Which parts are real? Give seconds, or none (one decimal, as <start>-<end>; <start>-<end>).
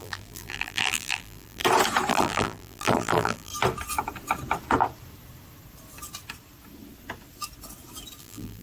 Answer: 1.6-2.1; 3.5-8.2